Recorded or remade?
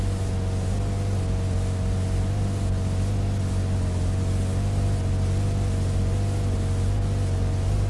recorded